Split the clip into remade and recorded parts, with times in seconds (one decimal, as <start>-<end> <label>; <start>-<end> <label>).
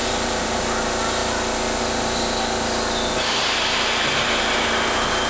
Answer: 0.0-0.6 remade; 0.6-5.3 recorded